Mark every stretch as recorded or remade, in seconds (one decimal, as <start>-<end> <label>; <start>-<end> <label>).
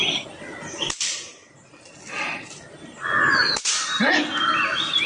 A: 0.0-5.1 recorded